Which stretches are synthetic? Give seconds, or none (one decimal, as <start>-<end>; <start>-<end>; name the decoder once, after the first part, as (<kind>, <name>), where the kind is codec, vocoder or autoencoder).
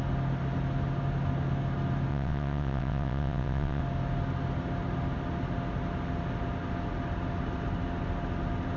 2.1-3.8 (vocoder, WaveNeXt)